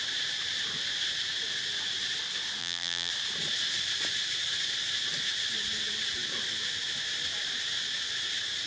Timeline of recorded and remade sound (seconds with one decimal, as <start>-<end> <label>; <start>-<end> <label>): 0.0-2.6 recorded; 2.6-3.1 remade; 3.1-8.7 recorded